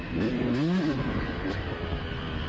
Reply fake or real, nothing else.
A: real